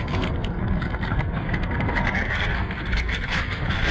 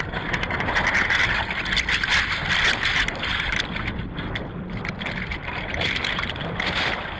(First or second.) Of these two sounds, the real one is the second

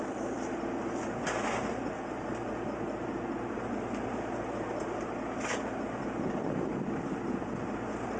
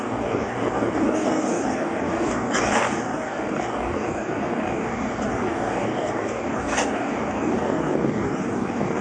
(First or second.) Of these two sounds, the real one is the first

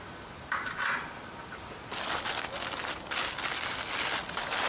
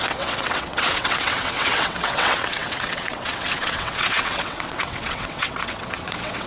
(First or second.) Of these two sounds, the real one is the first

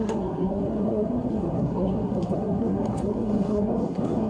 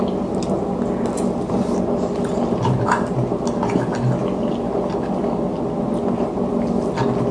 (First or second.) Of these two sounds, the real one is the second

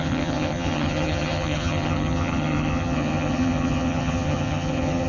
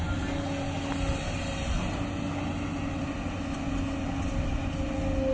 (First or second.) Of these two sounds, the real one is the second